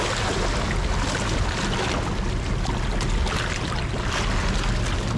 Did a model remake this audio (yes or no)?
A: no